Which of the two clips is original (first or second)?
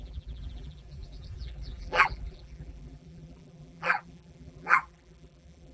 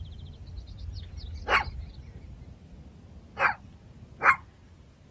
second